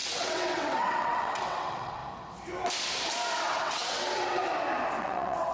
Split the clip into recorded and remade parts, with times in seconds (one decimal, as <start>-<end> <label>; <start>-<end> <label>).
0.0-2.0 remade; 2.0-3.5 recorded; 3.5-4.4 remade; 4.4-5.0 recorded; 5.0-5.5 remade